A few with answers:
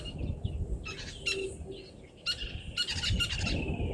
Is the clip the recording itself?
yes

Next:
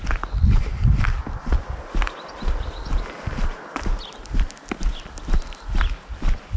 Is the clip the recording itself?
yes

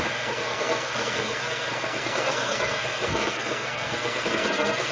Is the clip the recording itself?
no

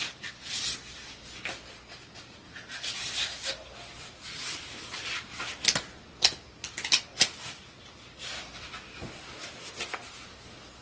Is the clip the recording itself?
yes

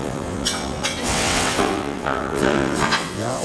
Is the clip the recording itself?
no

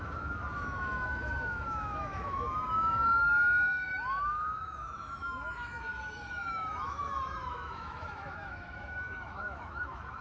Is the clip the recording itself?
no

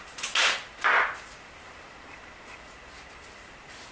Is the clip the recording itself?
yes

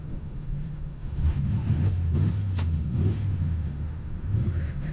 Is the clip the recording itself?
no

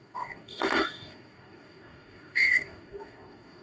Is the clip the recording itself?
no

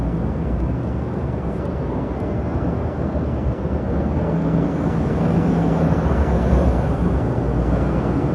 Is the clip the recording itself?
no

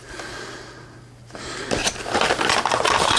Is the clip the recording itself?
yes